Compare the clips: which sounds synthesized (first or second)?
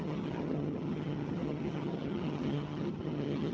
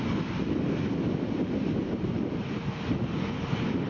first